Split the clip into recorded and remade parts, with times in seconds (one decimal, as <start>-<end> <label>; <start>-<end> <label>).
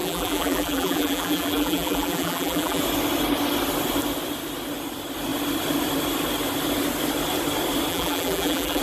0.0-2.8 remade; 2.8-7.9 recorded; 7.9-8.8 remade